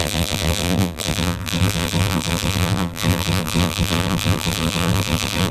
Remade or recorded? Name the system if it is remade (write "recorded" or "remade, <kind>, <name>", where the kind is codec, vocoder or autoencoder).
remade, vocoder, BigVGAN v2